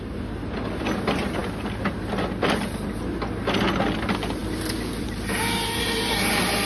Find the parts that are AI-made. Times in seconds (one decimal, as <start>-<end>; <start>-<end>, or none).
none